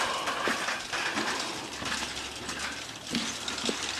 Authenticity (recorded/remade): recorded